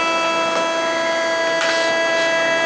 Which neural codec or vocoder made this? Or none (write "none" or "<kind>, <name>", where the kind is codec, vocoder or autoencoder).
none